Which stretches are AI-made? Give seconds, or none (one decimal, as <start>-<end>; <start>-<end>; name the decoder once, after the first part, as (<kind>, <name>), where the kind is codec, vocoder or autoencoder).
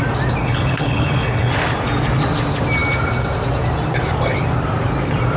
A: 0.4-1.5 (codec, HILCodec)